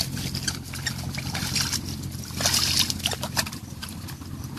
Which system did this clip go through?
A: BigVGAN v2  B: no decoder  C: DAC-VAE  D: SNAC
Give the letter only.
B